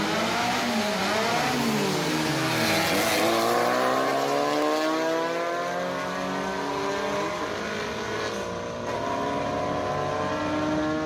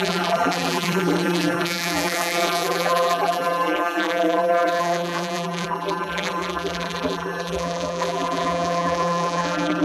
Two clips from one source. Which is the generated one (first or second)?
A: second